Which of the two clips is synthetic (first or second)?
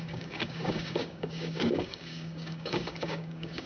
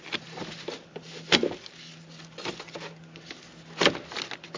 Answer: first